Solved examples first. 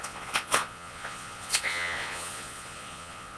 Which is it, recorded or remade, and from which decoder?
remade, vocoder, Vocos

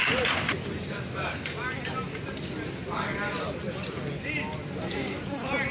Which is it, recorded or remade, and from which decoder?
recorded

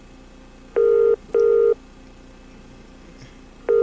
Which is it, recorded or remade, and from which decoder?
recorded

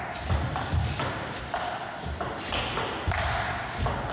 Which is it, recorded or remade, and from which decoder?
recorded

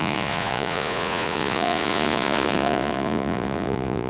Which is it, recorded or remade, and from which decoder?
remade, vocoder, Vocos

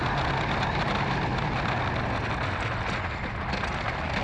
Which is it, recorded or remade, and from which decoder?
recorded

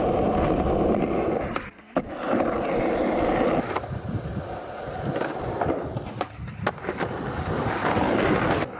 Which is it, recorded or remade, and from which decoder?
recorded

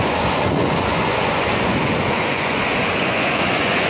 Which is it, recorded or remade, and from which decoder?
remade, vocoder, Vocos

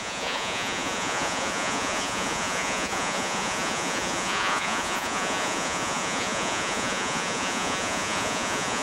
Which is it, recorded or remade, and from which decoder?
remade, vocoder, Vocos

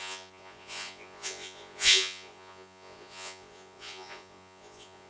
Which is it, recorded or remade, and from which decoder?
remade, vocoder, Vocos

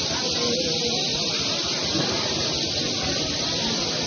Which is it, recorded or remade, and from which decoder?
recorded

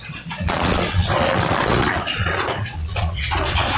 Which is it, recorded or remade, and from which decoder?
remade, vocoder, Vocos